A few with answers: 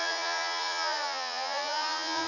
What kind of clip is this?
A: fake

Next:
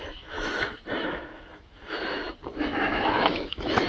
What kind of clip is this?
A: fake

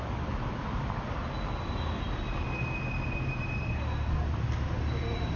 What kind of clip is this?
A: real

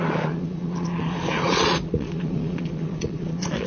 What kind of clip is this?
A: fake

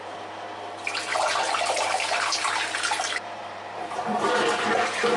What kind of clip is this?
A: fake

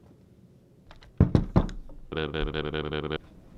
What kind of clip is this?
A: real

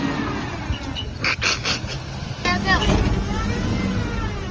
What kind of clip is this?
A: real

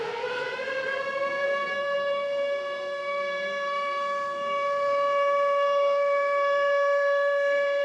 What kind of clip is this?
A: fake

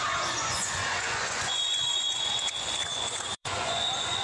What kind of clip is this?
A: fake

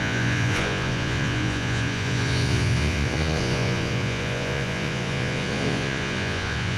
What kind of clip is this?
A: fake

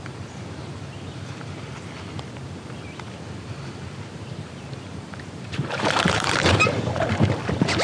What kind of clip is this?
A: fake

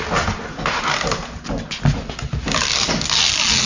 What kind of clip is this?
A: real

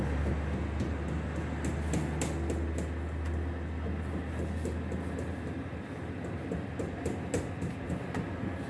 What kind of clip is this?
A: real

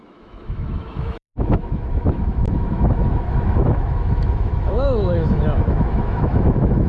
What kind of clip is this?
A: fake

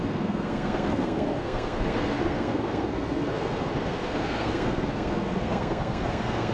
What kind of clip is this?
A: fake